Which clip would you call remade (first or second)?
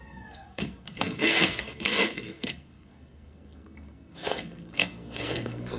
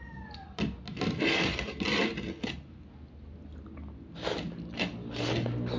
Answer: first